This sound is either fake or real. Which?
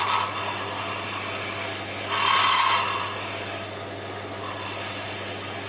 real